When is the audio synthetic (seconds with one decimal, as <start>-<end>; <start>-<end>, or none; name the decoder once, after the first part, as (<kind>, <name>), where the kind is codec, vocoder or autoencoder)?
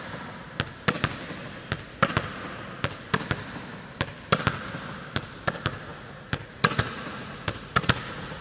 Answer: 5.9-8.4 (vocoder, Vocos)